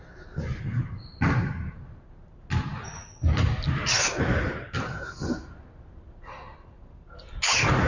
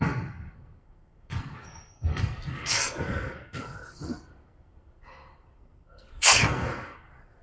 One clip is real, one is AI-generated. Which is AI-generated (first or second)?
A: second